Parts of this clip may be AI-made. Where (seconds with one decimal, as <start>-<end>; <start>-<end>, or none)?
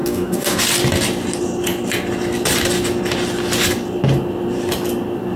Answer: 0.0-0.6